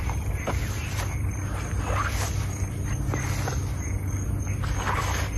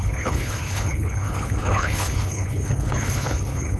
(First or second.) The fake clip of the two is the second